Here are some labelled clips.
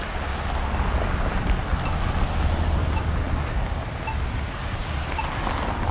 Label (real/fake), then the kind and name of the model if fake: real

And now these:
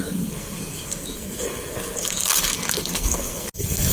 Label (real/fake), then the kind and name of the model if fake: fake, codec, SNAC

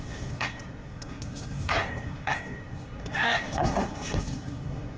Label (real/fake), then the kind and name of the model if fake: fake, codec, SNAC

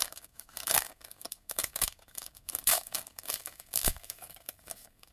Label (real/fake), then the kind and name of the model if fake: fake, codec, SNAC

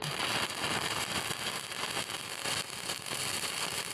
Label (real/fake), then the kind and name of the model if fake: real